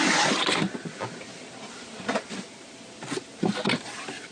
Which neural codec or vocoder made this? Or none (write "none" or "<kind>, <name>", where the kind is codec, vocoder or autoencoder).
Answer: none